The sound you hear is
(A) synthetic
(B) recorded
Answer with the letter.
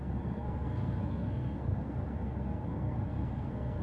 A